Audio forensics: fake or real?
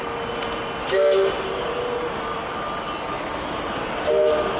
real